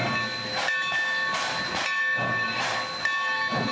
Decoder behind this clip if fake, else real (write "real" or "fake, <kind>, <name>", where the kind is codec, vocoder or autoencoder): real